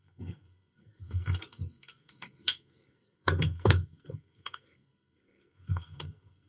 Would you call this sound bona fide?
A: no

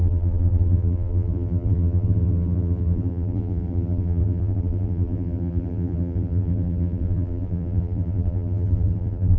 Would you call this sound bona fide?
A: no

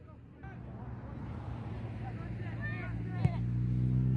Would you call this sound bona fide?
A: yes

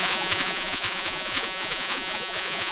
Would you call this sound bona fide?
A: no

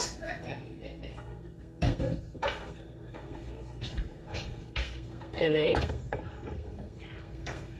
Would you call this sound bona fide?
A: no